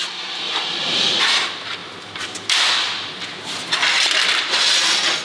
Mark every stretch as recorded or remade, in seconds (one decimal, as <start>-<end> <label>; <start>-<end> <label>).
0.0-1.8 recorded; 1.8-2.7 remade; 2.7-5.2 recorded